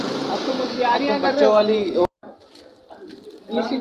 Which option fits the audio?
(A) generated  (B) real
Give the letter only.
A